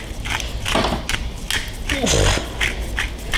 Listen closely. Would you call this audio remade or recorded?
recorded